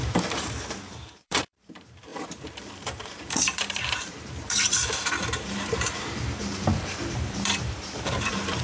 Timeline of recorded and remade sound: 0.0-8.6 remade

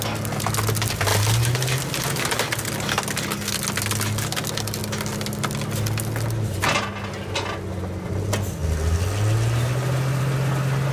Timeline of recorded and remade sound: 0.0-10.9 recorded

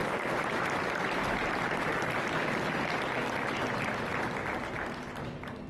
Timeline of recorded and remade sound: 0.0-2.0 remade; 2.0-5.7 recorded

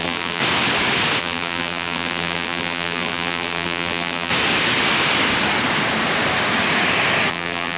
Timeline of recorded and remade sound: 0.0-0.4 remade; 0.4-1.2 recorded; 1.2-4.3 remade; 4.3-7.3 recorded; 7.3-7.8 remade

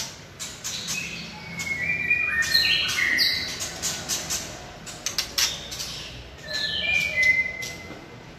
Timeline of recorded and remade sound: 0.0-8.4 recorded

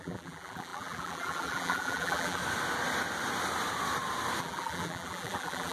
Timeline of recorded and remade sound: 0.0-2.4 remade; 2.4-4.4 recorded; 4.4-5.7 remade